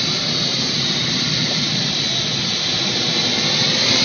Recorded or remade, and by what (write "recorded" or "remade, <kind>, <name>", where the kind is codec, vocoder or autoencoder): recorded